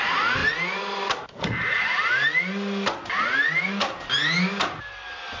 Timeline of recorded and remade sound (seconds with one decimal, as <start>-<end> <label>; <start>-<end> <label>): 0.0-5.4 recorded